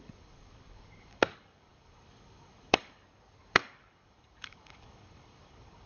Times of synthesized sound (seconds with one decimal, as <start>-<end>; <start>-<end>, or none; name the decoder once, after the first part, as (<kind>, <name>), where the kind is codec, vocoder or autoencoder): 0.0-5.9 (codec, DAC)